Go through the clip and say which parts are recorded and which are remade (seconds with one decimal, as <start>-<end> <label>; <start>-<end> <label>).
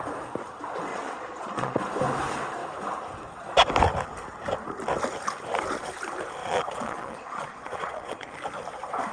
0.0-0.9 recorded; 0.9-1.8 remade; 1.8-6.4 recorded; 6.4-8.3 remade; 8.3-9.1 recorded